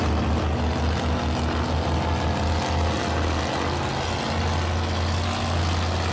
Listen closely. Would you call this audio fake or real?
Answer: real